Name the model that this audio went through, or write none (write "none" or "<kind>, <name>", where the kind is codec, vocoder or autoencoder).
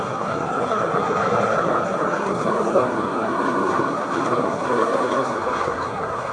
codec, SNAC